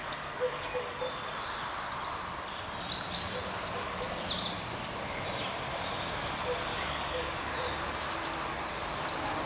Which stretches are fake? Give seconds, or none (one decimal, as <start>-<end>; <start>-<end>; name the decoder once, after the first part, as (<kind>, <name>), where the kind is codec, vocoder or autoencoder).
0.0-1.0 (codec, DAC); 3.6-4.2; 6.7-7.3